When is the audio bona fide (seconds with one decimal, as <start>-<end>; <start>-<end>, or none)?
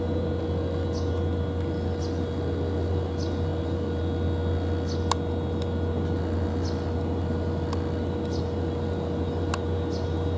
0.0-10.4